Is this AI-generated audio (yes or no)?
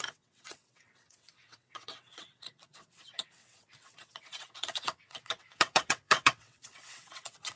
yes